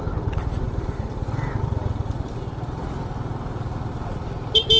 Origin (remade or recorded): recorded